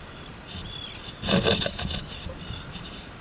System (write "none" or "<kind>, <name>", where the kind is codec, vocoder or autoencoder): none